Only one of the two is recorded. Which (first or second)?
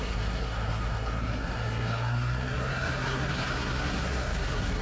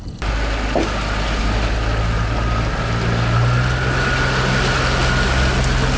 second